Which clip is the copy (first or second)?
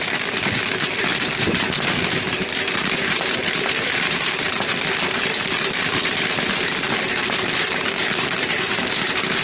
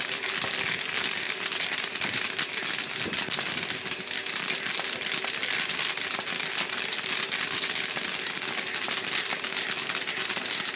first